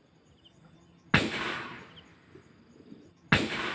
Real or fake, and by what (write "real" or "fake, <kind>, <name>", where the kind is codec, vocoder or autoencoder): real